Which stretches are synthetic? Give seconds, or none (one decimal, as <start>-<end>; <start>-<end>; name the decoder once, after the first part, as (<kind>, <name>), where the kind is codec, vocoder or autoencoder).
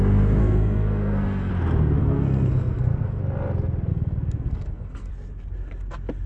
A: 0.4-1.5 (codec, SNAC); 2.0-3.2; 3.9-5.1